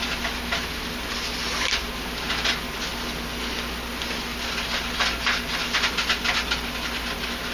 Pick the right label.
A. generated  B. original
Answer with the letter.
B